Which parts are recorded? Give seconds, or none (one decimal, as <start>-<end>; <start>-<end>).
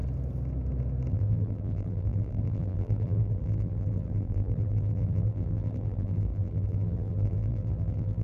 0.0-1.1